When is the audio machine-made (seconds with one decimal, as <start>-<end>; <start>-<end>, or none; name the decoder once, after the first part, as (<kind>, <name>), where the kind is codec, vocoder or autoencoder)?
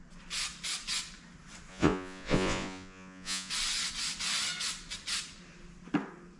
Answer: 1.7-3.5 (vocoder, Vocos)